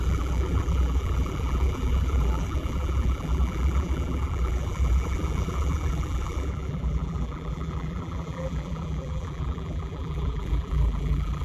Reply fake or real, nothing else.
fake